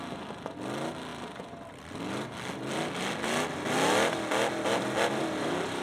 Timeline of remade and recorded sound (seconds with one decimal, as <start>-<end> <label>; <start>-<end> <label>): 0.0-5.8 recorded